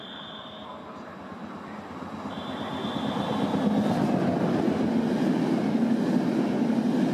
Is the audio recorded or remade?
recorded